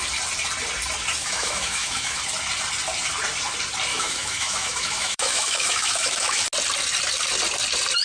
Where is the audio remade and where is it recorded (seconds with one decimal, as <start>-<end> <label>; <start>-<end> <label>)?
0.0-1.2 recorded; 1.2-2.2 remade; 2.2-3.9 recorded; 3.9-6.4 remade; 6.4-8.0 recorded